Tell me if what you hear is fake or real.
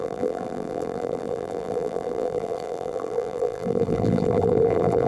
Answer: fake